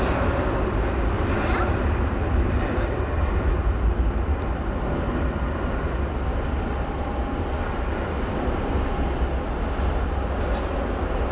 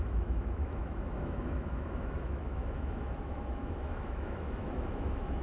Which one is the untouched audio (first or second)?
first